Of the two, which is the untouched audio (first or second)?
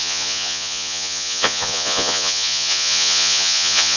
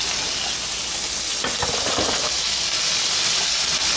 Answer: second